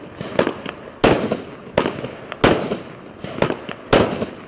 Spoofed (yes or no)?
no